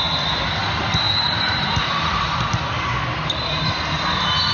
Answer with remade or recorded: remade